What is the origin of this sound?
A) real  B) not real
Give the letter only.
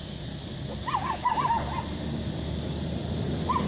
A